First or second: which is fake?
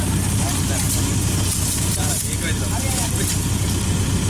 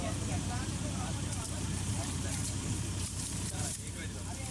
second